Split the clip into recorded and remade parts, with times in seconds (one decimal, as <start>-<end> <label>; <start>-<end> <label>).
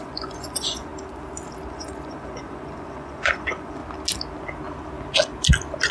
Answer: 0.0-0.9 remade; 0.9-1.7 recorded; 1.7-3.8 remade; 3.8-5.9 recorded